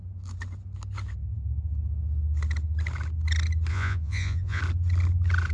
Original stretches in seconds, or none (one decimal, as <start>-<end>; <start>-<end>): 0.0-3.7; 4.6-5.5